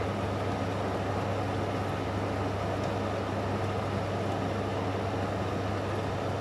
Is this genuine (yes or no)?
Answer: yes